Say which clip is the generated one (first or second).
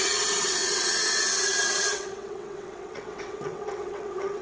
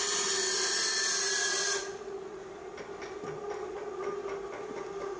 first